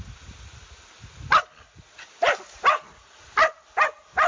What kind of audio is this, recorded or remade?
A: recorded